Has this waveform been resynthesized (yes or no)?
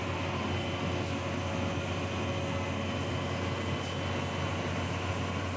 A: no